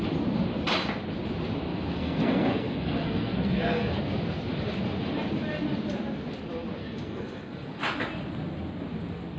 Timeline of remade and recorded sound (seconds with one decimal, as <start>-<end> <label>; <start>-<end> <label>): 0.0-1.7 recorded; 1.7-4.0 remade; 4.0-6.8 recorded; 6.8-7.8 remade; 7.8-9.4 recorded